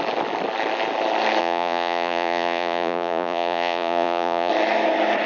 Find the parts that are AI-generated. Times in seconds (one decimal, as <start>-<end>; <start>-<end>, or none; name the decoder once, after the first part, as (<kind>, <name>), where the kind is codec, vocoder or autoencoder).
1.4-4.5 (vocoder, Vocos)